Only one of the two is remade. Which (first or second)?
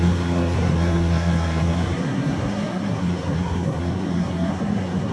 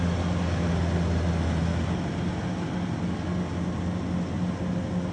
first